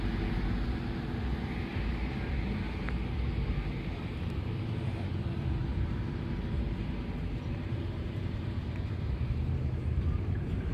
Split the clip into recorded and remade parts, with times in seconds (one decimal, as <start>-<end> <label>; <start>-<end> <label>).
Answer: 0.0-1.7 recorded; 1.7-2.3 remade; 2.3-5.6 recorded; 5.6-10.7 remade